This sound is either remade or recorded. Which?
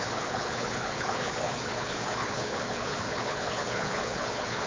remade